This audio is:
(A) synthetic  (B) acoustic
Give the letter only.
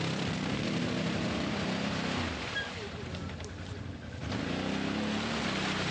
B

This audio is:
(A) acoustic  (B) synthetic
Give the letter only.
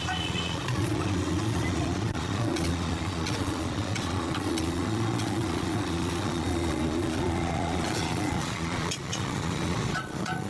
B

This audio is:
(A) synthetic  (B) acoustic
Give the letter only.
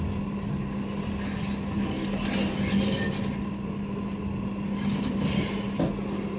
B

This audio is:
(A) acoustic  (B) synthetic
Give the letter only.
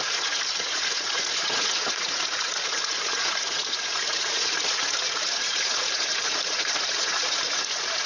B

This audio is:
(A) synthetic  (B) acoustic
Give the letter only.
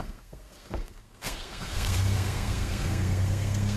A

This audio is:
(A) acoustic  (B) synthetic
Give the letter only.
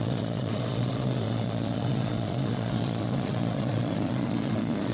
B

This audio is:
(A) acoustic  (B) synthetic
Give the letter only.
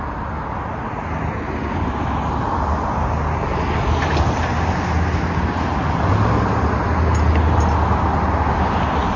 A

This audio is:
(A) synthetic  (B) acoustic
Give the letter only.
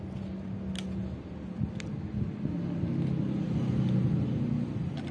B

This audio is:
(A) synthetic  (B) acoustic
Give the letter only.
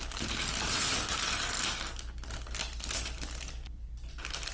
B